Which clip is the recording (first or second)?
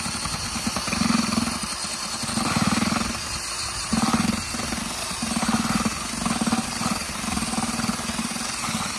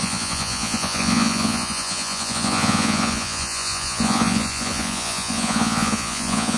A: first